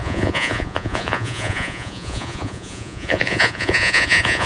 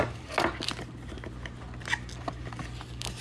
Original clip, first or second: second